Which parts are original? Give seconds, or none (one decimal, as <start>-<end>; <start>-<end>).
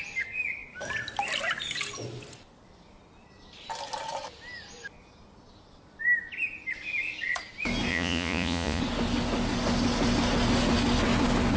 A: 0.0-7.9; 8.8-11.6